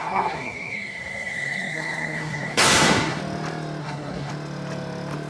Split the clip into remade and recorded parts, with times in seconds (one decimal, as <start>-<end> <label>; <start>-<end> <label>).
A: 0.0-3.2 remade; 3.2-3.8 recorded; 3.8-4.3 remade; 4.3-5.3 recorded